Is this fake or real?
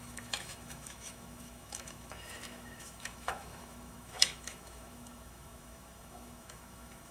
fake